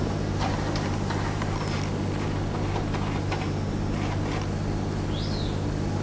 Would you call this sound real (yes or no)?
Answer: yes